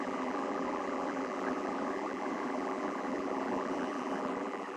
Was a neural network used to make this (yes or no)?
yes